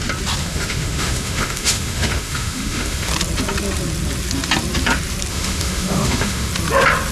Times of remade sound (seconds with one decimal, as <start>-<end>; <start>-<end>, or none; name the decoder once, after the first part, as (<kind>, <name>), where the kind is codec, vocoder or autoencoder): 0.4-3.1 (autoencoder, DAC-VAE); 5.3-6.5